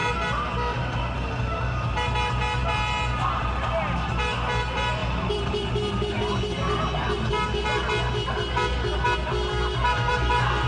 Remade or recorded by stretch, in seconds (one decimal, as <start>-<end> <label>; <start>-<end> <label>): 0.0-10.7 recorded